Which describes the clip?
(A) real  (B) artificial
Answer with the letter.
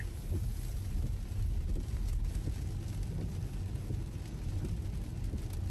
A